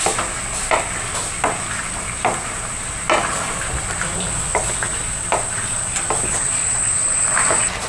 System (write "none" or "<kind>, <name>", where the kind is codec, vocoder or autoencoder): none